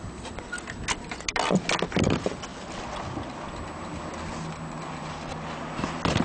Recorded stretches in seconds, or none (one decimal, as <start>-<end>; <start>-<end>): 0.0-6.2